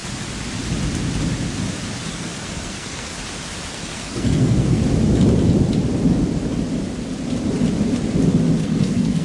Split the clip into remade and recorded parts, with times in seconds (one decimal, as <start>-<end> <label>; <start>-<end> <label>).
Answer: 0.0-2.1 recorded; 2.1-3.1 remade; 3.1-3.7 recorded; 3.7-4.8 remade; 4.8-8.6 recorded; 8.6-9.2 remade